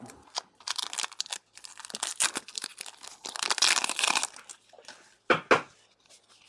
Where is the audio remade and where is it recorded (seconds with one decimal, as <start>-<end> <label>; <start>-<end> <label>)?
0.0-6.5 recorded